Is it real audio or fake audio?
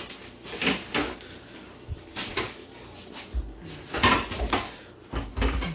real